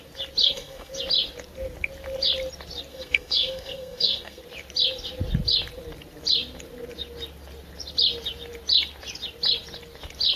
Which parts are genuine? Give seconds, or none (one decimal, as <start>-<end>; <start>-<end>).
0.0-0.4; 0.9-2.9; 4.4-10.4